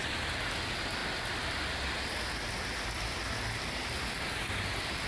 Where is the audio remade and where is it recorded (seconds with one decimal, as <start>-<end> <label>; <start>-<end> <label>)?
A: 0.0-5.1 recorded